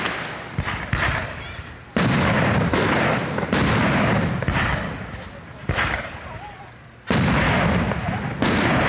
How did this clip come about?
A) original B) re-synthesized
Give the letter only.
A